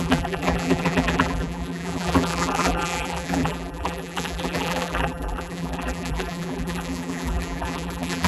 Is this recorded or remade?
remade